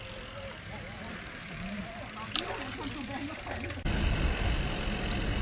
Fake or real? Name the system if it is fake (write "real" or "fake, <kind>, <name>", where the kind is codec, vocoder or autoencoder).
real